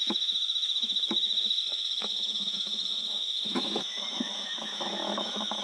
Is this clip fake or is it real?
fake